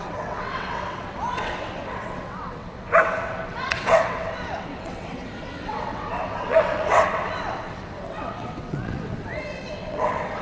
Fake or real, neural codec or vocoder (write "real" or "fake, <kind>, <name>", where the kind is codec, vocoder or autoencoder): fake, vocoder, WaveNeXt